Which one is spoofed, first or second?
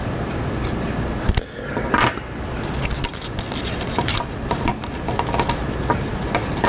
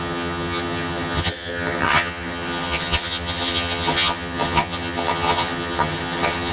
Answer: second